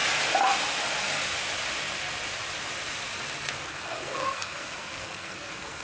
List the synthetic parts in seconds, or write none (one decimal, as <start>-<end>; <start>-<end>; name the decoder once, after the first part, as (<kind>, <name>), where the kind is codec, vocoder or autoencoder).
3.5-5.8 (codec, SNAC)